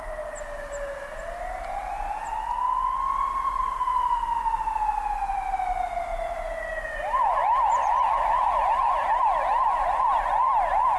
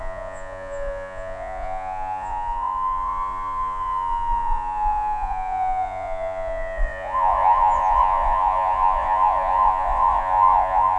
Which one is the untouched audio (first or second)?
first